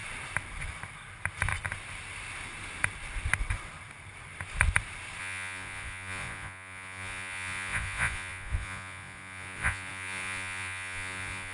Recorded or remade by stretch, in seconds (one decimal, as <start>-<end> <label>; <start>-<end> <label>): 0.0-5.2 recorded; 5.2-11.5 remade